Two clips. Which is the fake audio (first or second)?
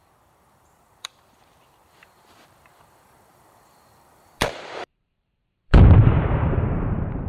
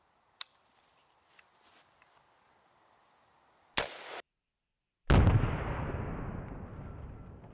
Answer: first